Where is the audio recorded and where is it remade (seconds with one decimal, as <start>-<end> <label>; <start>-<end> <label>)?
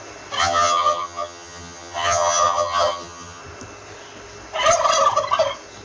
0.0-0.4 recorded; 0.4-3.4 remade; 3.4-5.8 recorded